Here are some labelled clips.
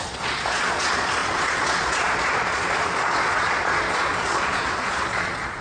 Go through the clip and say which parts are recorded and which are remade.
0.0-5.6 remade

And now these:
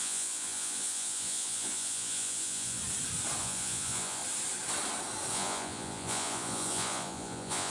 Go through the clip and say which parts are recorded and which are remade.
0.0-2.8 remade; 2.8-3.4 recorded; 3.4-4.2 remade; 4.2-5.3 recorded; 5.3-7.7 remade

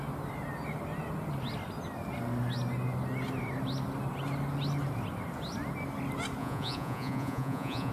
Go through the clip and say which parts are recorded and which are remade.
0.0-6.4 recorded; 6.4-7.9 remade

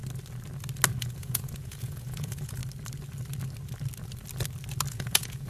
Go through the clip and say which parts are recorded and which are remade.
0.0-1.0 recorded; 1.0-2.6 remade; 2.6-4.9 recorded; 4.9-5.5 remade

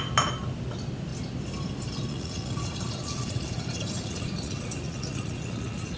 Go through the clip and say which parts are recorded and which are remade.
0.0-2.1 recorded; 2.1-6.0 remade

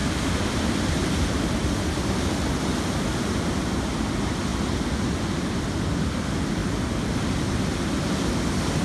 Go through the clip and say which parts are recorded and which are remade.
0.0-8.8 recorded

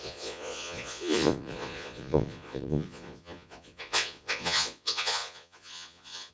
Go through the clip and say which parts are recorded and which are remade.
0.0-6.3 remade